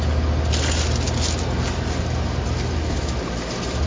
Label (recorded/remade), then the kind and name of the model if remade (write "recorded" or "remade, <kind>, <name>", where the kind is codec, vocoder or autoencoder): recorded